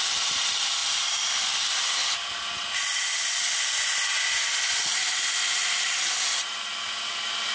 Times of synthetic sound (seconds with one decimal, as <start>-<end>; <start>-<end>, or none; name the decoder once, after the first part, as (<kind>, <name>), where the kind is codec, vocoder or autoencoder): none